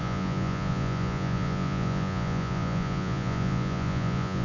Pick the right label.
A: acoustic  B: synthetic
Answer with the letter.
B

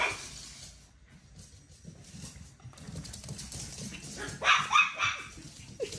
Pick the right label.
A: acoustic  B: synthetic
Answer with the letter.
A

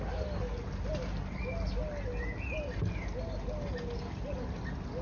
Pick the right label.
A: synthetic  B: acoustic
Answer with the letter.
B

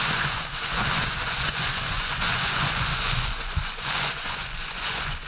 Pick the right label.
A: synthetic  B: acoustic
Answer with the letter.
A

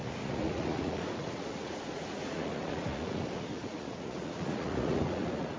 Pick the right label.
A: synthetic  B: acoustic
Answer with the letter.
A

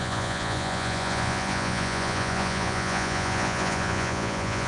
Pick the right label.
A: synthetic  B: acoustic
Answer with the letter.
A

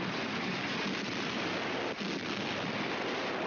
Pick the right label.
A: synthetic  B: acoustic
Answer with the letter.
B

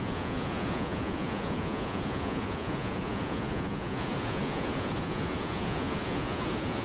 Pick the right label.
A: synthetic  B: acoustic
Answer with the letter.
A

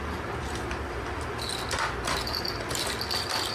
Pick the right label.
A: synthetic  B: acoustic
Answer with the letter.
B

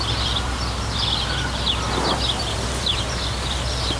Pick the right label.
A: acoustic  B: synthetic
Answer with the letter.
A